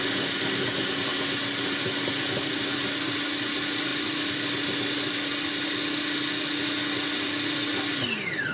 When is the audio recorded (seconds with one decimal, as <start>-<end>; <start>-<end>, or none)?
0.0-8.5